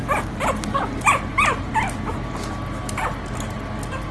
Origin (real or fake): real